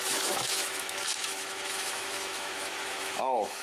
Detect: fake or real fake